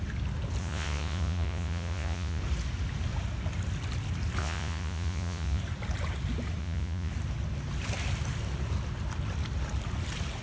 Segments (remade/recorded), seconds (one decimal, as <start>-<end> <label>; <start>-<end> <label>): 0.0-0.6 recorded; 0.6-2.4 remade; 2.4-4.4 recorded; 4.4-5.6 remade; 5.6-6.6 recorded; 6.6-7.1 remade; 7.1-10.4 recorded